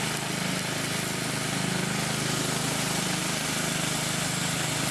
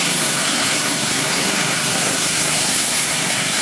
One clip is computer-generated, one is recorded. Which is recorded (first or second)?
first